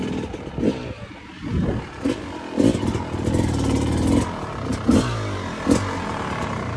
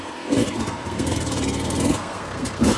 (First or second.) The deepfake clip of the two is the second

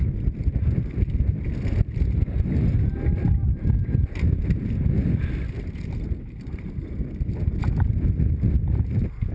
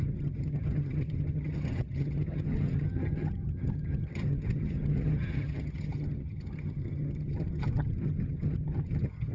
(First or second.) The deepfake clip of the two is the second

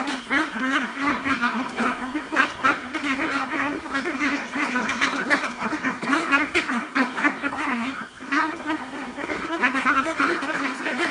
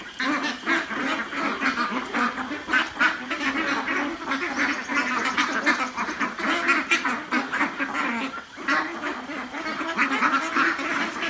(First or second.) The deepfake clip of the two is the first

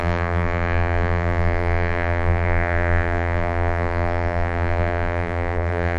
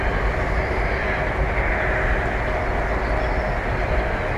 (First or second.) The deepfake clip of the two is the first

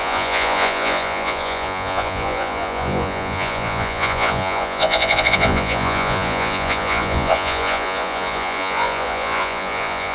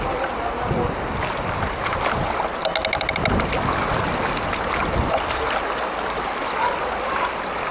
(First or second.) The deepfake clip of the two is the first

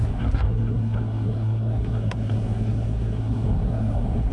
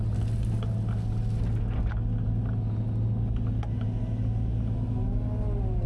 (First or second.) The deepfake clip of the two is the first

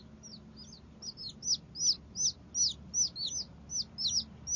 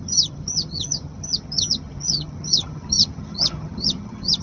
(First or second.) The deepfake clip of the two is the second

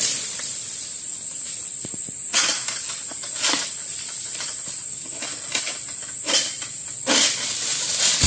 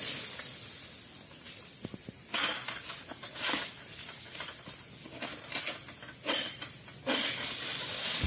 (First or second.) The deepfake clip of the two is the first